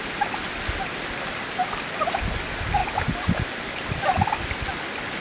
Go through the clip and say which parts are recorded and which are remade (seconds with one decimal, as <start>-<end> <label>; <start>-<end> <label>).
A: 0.0-5.2 recorded